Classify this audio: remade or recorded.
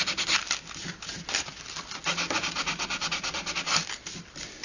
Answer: recorded